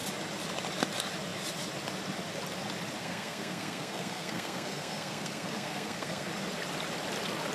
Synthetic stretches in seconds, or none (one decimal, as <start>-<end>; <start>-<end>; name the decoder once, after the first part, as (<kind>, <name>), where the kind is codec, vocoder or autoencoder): 3.0-6.3 (codec, SNAC)